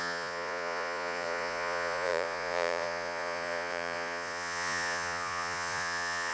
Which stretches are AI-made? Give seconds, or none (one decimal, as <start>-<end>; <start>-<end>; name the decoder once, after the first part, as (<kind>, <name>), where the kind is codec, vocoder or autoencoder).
0.0-6.3 (vocoder, Vocos)